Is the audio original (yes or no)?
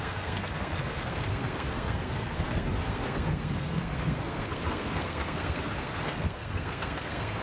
no